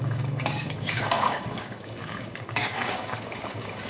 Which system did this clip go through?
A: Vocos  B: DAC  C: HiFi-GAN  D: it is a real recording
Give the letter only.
B